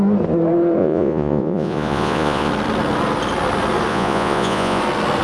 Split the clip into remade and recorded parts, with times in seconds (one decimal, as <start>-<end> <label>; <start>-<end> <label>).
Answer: 0.0-0.8 recorded; 0.8-2.5 remade; 2.5-3.9 recorded; 3.9-4.8 remade; 4.8-5.2 recorded